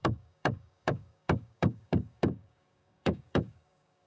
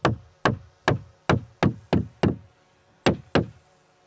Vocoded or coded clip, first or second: first